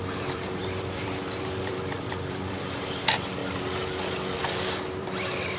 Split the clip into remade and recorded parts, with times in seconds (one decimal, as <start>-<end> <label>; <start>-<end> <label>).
0.0-3.4 remade; 3.4-5.0 recorded; 5.0-5.6 remade